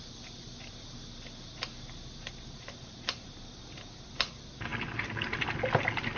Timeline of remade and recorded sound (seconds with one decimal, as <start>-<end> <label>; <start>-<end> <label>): 0.0-6.2 recorded